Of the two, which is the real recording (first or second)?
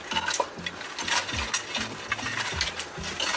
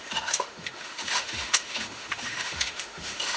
first